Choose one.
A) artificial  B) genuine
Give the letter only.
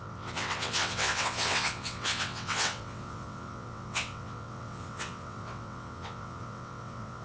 A